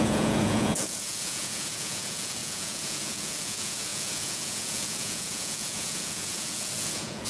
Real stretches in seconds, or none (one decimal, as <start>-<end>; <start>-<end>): none